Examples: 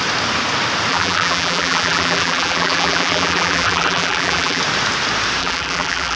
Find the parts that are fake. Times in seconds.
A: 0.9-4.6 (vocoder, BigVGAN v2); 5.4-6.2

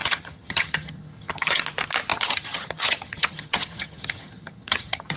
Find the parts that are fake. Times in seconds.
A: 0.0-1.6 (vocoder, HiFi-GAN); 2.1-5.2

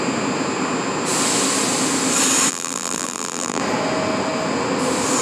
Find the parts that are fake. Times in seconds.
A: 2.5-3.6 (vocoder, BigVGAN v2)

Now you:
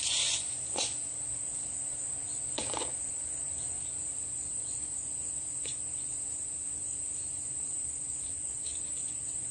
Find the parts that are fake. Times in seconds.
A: 0.0-1.1 (vocoder, Vocos); 2.5-6.6; 7.3-9.5

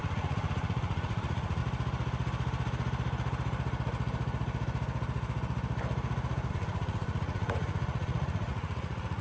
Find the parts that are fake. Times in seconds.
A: 0.0-1.6 (vocoder, Vocos); 6.5-9.2

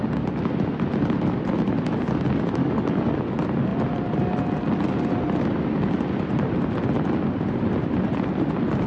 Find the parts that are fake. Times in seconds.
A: 2.6-3.2 (codec, DAC)

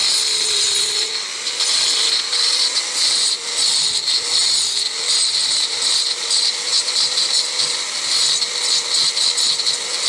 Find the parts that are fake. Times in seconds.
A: 5.4-6.0 (vocoder, BigVGAN v2); 6.7-7.3; 9.0-9.6